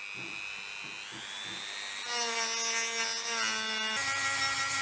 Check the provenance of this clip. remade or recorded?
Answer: recorded